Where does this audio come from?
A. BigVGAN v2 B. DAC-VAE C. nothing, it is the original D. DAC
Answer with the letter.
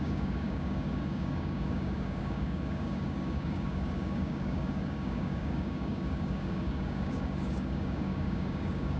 D